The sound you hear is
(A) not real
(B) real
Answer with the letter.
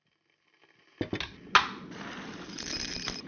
B